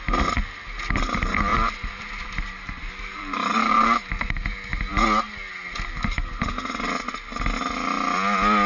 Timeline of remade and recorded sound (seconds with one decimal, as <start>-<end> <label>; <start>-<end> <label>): 0.0-1.5 recorded; 1.5-4.1 remade; 4.1-8.7 recorded

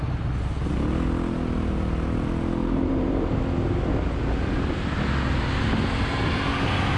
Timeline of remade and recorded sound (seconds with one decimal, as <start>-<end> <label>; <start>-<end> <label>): 0.0-2.6 recorded; 2.6-3.4 remade; 3.4-7.0 recorded

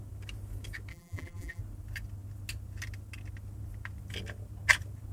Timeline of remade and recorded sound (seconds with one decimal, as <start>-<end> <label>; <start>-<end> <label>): 0.0-0.9 recorded; 0.9-1.6 remade; 1.6-5.1 recorded

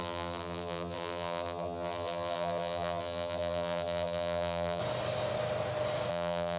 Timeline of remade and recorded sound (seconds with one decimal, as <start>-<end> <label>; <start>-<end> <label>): 0.0-4.8 remade; 4.8-6.1 recorded; 6.1-6.6 remade

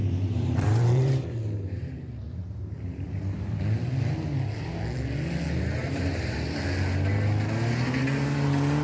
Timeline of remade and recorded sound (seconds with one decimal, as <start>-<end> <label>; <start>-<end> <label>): 0.0-3.6 remade; 3.6-5.8 recorded; 5.8-6.6 remade; 6.6-8.8 recorded